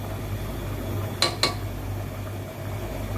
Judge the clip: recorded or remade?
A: recorded